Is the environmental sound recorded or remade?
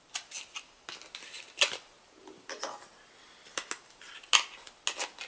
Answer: recorded